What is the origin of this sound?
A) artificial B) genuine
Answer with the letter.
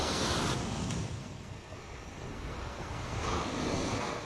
A